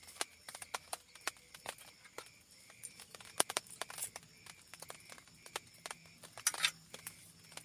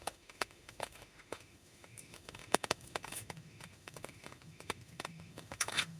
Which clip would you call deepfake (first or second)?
second